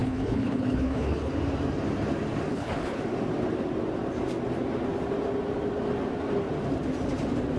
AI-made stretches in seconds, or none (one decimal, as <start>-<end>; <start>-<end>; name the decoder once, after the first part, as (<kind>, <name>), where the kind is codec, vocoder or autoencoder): 0.0-1.3 (codec, HILCodec); 2.5-3.0